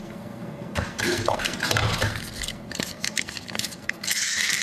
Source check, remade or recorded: remade